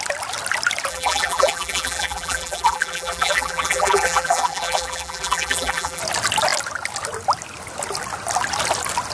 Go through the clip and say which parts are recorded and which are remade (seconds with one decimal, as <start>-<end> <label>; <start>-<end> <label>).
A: 0.0-0.9 recorded; 0.9-6.0 remade; 6.0-9.1 recorded